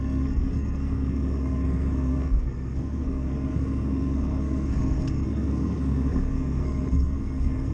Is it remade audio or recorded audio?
remade